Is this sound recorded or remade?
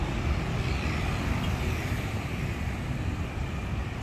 remade